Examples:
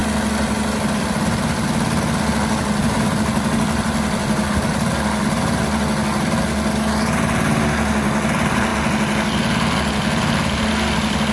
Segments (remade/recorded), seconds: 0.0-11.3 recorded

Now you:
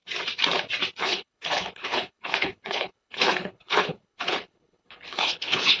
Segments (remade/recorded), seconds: 0.0-1.0 recorded; 1.0-5.8 remade

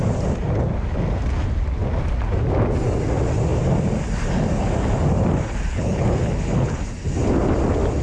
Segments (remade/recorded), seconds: 0.0-5.7 recorded; 5.7-6.8 remade; 6.8-8.0 recorded